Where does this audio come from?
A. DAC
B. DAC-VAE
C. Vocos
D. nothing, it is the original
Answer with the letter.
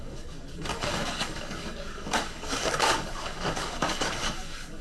A